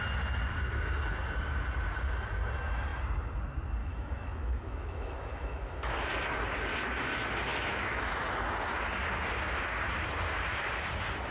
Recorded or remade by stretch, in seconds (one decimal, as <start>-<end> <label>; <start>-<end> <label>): 0.0-3.8 recorded; 3.8-5.9 remade; 5.9-7.5 recorded; 7.5-8.1 remade; 8.1-11.3 recorded